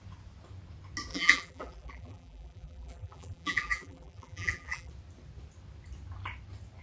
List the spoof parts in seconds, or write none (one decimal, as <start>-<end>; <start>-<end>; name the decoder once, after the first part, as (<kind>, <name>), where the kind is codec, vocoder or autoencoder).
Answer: 1.1-4.9 (vocoder, BigVGAN v2)